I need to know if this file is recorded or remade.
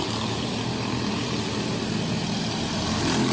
recorded